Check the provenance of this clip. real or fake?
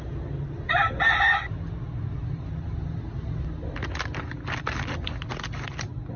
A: real